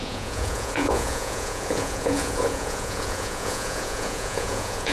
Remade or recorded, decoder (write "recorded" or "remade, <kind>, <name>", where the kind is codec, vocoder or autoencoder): remade, vocoder, Vocos